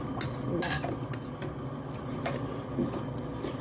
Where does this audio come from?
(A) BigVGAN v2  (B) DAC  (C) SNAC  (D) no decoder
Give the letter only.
D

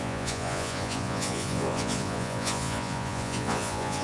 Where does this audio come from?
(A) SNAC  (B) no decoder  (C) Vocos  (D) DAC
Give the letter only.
C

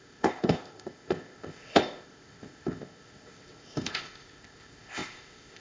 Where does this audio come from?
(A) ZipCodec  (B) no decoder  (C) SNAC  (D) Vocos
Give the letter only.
A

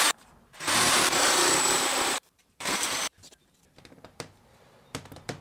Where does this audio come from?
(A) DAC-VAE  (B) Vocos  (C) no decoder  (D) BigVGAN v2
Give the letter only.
D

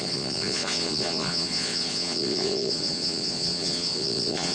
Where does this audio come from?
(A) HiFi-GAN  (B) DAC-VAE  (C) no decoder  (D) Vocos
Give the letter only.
D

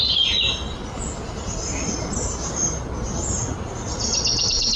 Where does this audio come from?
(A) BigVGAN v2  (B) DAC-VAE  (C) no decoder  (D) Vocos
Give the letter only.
C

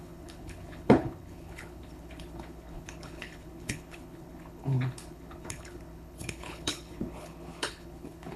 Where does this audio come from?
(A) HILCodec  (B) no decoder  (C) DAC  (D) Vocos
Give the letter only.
A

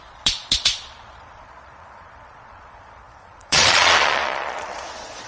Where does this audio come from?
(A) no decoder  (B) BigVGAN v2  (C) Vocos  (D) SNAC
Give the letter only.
C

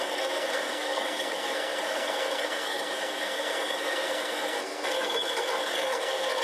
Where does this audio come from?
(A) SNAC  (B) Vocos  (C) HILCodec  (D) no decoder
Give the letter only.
A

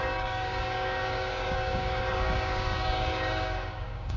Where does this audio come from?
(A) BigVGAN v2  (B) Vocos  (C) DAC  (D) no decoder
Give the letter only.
C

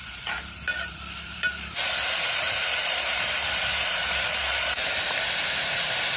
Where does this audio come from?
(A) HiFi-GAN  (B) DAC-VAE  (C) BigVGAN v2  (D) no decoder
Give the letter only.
C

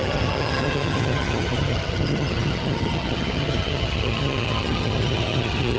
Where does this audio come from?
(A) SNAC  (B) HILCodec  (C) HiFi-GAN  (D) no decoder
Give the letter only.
C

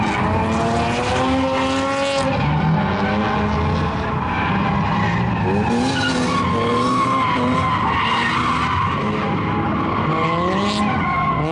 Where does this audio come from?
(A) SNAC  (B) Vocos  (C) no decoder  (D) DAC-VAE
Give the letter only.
C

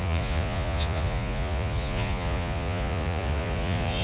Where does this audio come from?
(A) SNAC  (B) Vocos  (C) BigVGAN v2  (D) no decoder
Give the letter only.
B